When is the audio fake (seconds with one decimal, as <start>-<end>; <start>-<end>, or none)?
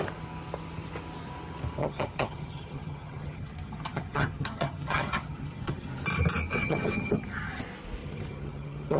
1.8-5.9; 6.6-7.6; 8.0-9.0